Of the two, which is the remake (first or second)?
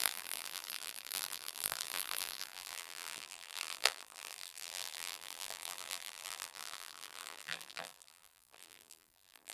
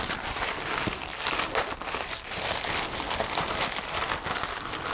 first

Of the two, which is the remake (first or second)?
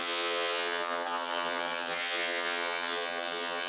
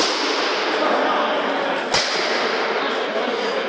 first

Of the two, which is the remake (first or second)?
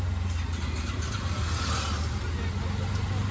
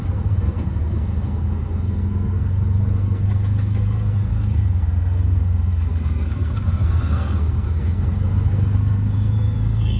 second